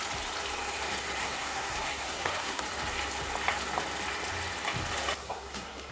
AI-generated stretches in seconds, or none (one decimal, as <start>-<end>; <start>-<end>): 1.2-2.6; 5.2-5.9